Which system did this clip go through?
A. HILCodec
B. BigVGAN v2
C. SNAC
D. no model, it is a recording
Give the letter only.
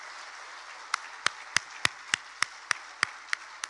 D